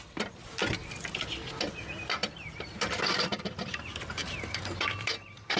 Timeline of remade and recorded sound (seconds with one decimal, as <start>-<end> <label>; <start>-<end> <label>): 0.0-2.2 recorded; 2.2-5.6 remade